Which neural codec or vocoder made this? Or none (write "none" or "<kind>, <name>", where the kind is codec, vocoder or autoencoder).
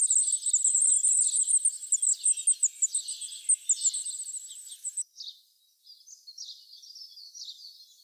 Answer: none